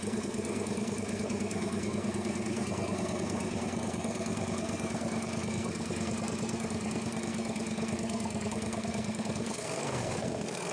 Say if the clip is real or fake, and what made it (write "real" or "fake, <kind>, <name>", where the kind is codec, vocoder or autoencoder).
fake, codec, SNAC